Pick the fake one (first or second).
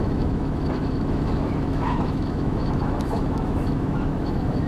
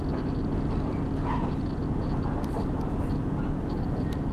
first